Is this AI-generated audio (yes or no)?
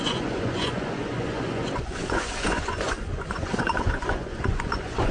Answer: yes